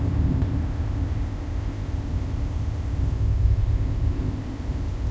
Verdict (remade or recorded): remade